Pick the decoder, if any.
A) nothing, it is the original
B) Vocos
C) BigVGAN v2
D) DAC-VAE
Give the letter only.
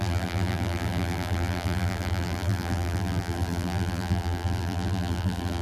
C